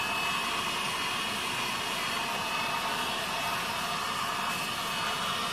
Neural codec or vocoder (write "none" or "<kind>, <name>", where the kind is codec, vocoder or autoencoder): none